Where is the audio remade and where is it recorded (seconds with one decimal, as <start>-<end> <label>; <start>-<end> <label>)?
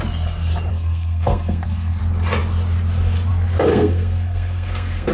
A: 0.0-0.7 recorded; 0.7-2.0 remade; 2.0-3.7 recorded; 3.7-5.1 remade